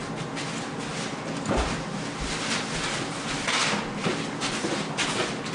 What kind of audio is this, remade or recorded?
recorded